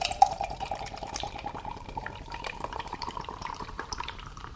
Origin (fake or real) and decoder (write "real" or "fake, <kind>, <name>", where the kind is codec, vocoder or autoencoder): fake, vocoder, BigVGAN v2